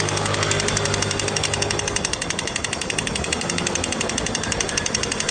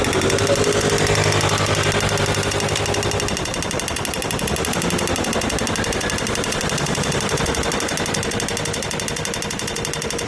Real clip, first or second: second